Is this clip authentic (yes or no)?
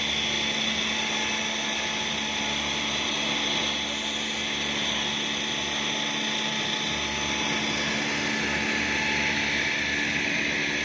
yes